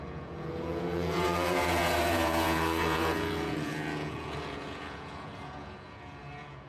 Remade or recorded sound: remade